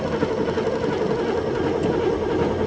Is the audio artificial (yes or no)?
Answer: no